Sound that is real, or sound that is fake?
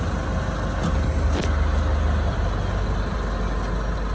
real